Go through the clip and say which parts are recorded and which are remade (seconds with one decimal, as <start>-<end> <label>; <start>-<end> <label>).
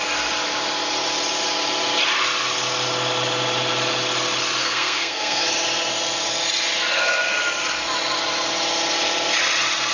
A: 0.0-4.6 recorded; 4.6-5.4 remade; 5.4-9.9 recorded